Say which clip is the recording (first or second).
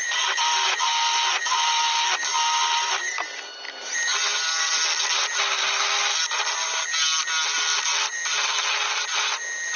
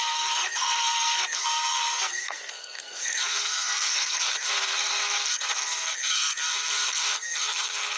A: first